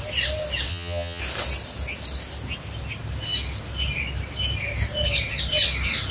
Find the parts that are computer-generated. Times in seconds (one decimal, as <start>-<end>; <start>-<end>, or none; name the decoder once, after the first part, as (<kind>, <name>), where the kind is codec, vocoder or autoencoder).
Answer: 0.7-1.2 (vocoder, HiFi-GAN)